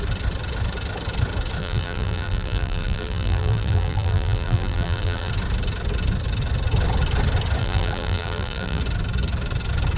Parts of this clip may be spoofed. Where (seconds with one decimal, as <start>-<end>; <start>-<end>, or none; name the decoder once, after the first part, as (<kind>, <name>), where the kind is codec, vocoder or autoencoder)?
1.6-5.3 (vocoder, BigVGAN v2); 7.6-8.8